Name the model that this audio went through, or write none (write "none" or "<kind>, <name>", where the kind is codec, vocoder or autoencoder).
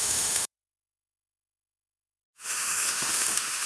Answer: autoencoder, DAC-VAE